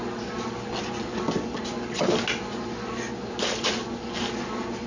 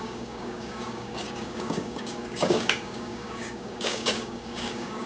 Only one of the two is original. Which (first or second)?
first